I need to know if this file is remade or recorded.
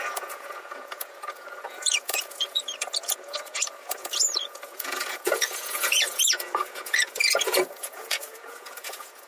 remade